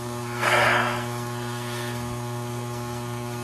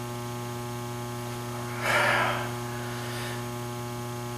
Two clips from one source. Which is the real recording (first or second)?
second